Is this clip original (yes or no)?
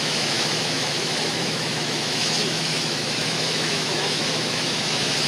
no